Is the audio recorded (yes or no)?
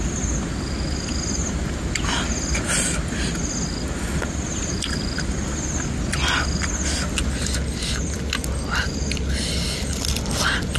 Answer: yes